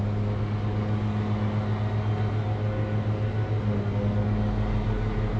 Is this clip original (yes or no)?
yes